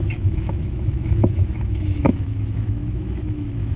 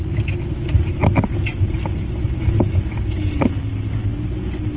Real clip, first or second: second